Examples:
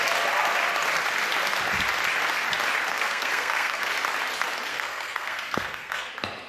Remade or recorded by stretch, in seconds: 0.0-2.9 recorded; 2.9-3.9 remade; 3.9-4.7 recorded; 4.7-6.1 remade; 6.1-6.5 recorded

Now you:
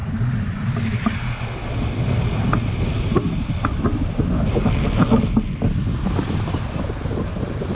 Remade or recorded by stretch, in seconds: 0.0-0.8 remade; 0.8-7.7 recorded

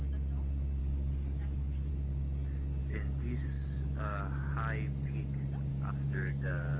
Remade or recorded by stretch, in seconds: 0.0-0.8 recorded; 0.8-1.9 remade; 1.9-2.8 recorded; 2.8-4.5 remade; 4.5-5.7 recorded; 5.7-6.8 remade